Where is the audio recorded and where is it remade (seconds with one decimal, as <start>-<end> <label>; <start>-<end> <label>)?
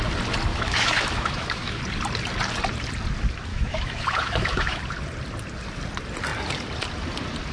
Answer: 0.0-0.5 recorded; 0.5-1.8 remade; 1.8-3.5 recorded; 3.5-4.8 remade; 4.8-7.5 recorded